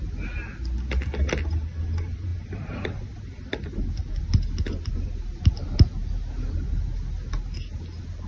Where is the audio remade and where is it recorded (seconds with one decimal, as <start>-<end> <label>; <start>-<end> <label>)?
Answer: 0.0-8.3 recorded